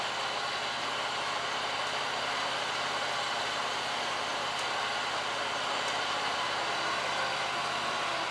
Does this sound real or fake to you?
fake